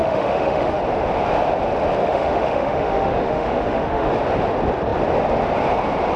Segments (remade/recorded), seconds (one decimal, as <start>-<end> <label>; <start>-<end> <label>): 0.0-0.8 remade; 0.8-2.0 recorded; 2.0-4.1 remade; 4.1-6.2 recorded